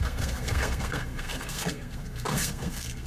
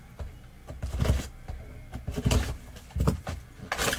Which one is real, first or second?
second